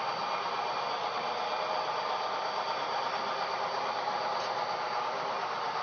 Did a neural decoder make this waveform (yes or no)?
no